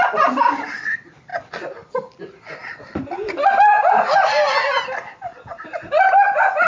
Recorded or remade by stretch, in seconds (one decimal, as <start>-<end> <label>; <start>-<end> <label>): 0.0-6.7 recorded

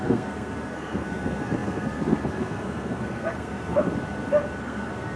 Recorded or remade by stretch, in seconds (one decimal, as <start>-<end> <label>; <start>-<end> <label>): 0.0-3.8 remade; 3.8-4.6 recorded; 4.6-5.2 remade

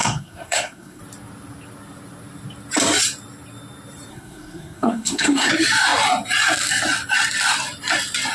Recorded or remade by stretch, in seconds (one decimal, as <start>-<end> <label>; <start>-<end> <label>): 0.0-1.0 remade; 1.0-4.1 recorded; 4.1-5.5 remade; 5.5-8.3 recorded

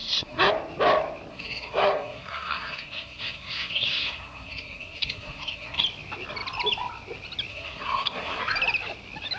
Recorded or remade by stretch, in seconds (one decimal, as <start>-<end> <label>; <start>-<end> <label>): 0.0-0.5 remade; 0.5-1.3 recorded; 1.3-5.8 remade; 5.8-7.5 recorded; 7.5-8.4 remade; 8.4-9.4 recorded

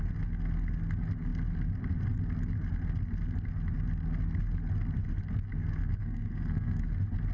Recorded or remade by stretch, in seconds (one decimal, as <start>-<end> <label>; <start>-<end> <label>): 0.0-5.8 recorded; 5.8-6.8 remade; 6.8-7.3 recorded

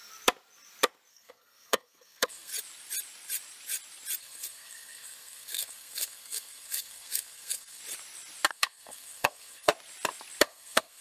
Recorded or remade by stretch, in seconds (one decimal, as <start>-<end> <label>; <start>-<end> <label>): 0.0-1.1 recorded; 1.1-2.5 remade; 2.5-4.2 recorded; 4.2-7.8 remade; 7.8-8.5 recorded; 8.5-9.7 remade; 9.7-10.4 recorded; 10.4-11.0 remade